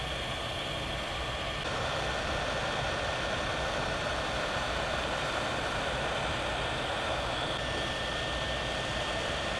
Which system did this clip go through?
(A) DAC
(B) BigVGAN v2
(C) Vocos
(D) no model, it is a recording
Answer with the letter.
D